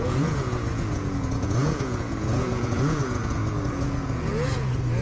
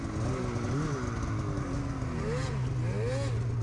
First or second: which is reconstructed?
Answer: first